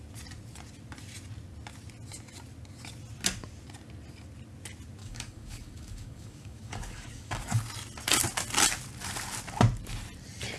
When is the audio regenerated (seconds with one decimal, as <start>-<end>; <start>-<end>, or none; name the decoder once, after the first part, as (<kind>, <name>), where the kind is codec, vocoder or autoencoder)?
5.0-7.6 (codec, DAC)